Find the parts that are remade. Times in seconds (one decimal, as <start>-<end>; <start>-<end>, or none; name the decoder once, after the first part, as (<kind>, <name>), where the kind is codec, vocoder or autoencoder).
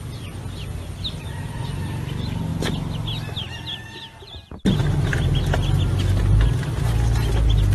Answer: none